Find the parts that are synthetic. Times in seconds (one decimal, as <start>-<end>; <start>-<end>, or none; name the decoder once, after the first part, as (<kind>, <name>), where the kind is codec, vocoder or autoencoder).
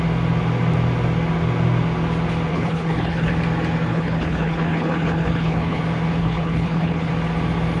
2.5-3.3 (codec, HILCodec); 3.9-5.8; 6.2-7.1